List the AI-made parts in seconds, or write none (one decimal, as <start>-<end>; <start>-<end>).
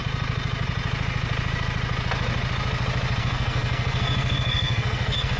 3.2-5.4